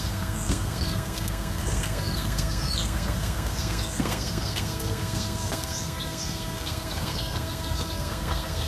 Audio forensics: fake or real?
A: fake